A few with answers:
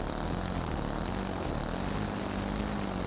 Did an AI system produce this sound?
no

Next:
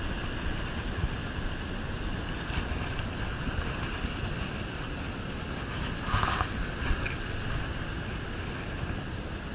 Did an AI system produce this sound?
no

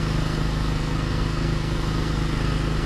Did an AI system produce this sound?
yes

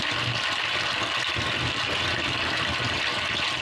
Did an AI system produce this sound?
no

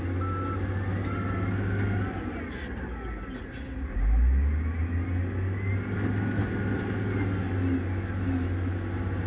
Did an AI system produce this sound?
no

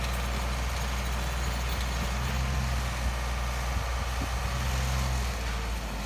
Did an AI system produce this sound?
no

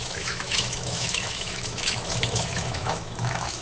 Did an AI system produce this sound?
yes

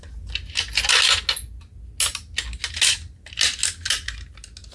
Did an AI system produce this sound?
no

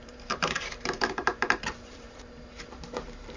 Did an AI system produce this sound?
yes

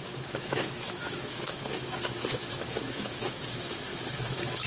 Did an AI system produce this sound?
yes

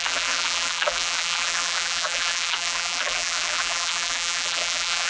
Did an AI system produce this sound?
yes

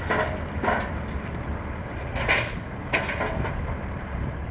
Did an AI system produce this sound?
no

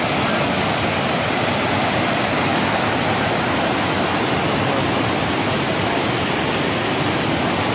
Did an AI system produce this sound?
no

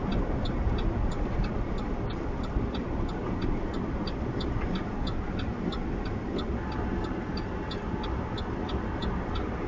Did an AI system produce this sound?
no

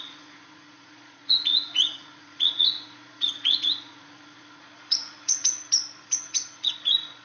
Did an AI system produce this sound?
yes